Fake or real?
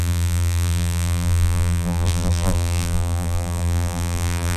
fake